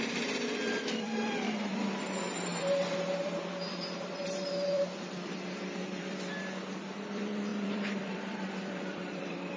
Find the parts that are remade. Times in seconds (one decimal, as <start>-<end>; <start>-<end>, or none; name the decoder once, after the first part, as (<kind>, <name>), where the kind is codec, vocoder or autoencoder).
0.0-9.6 (vocoder, BigVGAN v2)

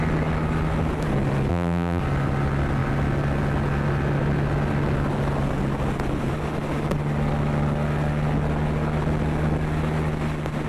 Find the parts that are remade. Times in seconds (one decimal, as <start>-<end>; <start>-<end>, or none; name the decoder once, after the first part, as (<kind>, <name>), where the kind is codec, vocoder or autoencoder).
1.5-2.0 (vocoder, BigVGAN v2)

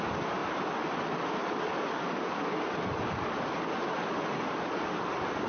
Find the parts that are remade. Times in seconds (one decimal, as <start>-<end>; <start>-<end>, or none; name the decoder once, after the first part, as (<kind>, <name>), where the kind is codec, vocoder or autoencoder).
none

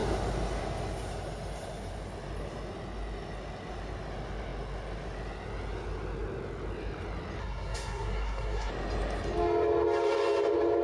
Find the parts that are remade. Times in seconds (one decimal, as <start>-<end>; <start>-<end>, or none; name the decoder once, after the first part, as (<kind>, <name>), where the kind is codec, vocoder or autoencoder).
7.4-8.7 (codec, SNAC)

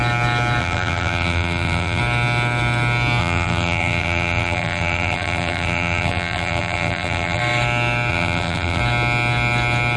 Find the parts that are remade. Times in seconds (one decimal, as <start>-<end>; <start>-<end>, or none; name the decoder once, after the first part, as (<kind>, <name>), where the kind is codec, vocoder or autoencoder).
0.6-2.0 (vocoder, BigVGAN v2); 3.2-7.4; 8.1-8.8

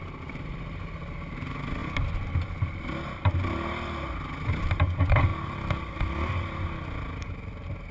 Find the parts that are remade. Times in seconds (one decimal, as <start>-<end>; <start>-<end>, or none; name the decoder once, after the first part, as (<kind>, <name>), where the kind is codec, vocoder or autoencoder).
none

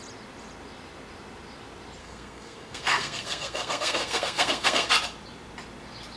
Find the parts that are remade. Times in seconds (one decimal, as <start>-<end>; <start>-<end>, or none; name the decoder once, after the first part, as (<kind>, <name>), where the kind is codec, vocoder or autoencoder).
2.0-4.9 (codec, SNAC)

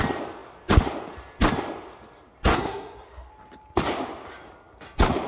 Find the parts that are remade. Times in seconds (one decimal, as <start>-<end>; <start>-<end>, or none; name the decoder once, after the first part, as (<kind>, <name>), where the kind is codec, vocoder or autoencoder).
2.5-3.3 (codec, SNAC)